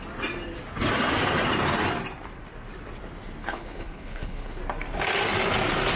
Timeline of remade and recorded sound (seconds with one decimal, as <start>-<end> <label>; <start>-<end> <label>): 0.0-3.4 recorded; 3.4-4.6 remade; 4.6-6.0 recorded